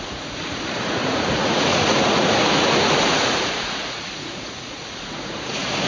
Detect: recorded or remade remade